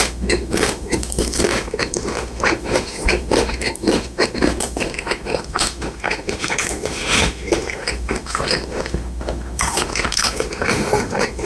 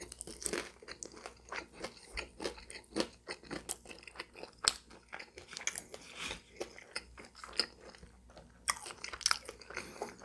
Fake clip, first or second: first